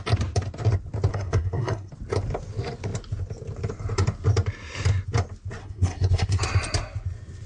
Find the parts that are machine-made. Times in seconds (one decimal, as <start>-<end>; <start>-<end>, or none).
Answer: 1.1-1.9; 5.6-6.4